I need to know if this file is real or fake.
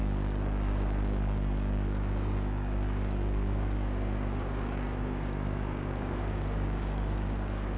fake